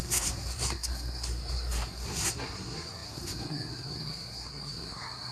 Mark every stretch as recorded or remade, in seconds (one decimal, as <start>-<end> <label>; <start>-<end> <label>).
0.0-5.3 remade